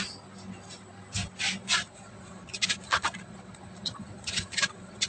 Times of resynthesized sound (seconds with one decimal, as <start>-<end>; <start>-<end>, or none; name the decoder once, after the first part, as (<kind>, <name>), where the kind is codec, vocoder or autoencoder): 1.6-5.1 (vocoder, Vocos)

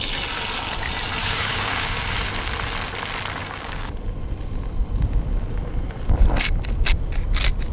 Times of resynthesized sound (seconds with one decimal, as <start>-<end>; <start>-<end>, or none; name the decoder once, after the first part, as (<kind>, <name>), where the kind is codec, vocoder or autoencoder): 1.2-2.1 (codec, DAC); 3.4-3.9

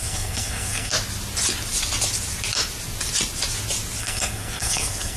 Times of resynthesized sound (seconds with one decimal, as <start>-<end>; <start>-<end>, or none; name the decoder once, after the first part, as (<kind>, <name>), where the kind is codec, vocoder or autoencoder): 0.0-0.9 (codec, SNAC); 4.0-5.2

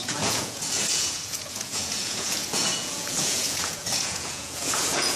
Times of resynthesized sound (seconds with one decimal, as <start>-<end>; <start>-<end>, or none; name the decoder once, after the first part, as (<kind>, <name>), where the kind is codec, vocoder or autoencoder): 0.0-5.2 (vocoder, Vocos)